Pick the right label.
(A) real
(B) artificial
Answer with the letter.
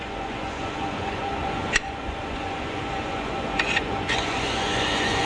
B